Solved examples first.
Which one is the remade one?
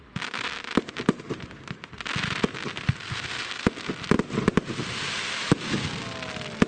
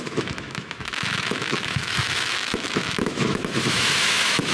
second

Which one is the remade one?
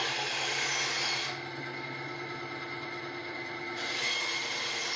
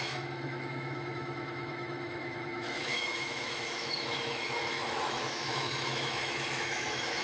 second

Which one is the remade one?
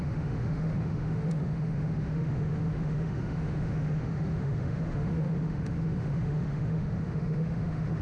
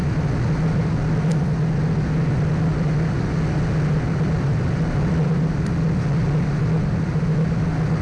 first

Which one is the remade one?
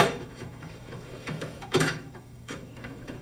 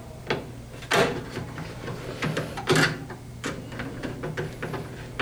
first